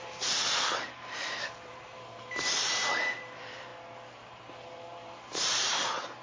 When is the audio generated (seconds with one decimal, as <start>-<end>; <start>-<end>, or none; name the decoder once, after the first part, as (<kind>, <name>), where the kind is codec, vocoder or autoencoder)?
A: 0.0-3.7 (vocoder, BigVGAN v2); 4.5-6.2